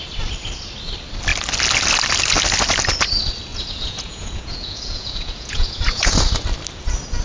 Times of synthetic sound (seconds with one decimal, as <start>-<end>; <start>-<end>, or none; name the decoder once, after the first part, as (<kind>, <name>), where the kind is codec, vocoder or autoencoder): 3.5-6.1 (vocoder, Vocos)